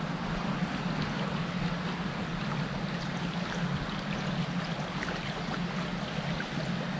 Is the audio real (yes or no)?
yes